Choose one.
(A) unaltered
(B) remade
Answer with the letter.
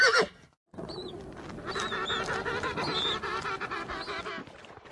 A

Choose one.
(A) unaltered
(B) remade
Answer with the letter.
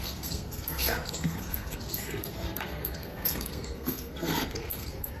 B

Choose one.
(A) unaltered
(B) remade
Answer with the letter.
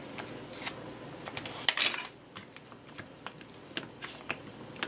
A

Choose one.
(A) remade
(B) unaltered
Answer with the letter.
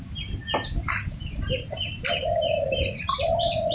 A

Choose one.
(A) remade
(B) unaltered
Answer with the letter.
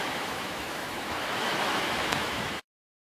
A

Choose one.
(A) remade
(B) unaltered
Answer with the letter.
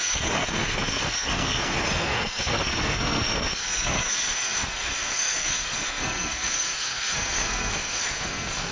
A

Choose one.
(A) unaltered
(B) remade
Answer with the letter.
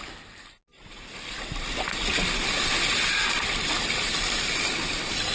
A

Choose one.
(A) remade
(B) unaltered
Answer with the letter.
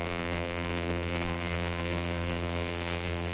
A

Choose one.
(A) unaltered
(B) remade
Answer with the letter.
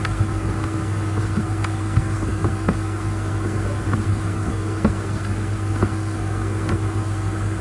B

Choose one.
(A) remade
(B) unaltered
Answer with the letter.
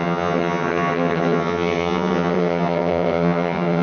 A